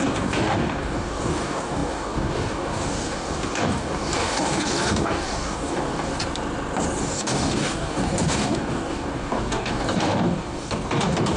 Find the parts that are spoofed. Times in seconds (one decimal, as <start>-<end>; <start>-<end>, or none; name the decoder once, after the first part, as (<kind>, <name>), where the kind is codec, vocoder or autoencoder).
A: 0.0-6.1 (codec, DAC); 7.0-11.4